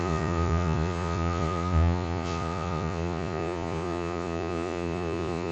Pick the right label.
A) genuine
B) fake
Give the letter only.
B